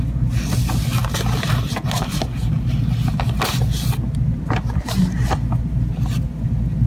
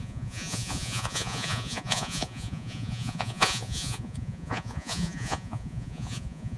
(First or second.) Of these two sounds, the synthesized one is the second